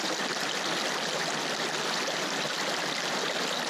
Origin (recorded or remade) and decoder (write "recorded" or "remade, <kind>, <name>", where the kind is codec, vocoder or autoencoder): recorded